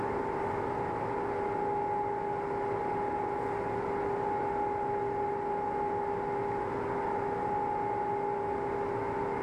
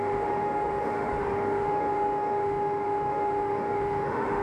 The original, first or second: first